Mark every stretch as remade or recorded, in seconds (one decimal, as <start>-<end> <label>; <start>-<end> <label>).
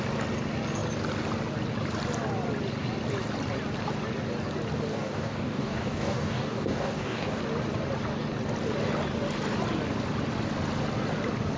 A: 0.0-4.9 recorded; 4.9-7.4 remade; 7.4-11.6 recorded